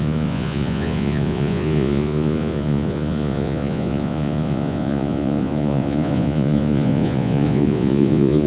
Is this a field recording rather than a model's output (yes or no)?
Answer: no